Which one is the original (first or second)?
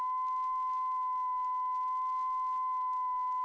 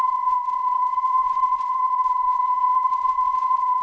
first